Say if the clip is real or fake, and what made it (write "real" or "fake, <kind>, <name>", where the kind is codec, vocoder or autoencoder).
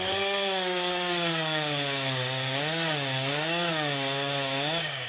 fake, codec, DAC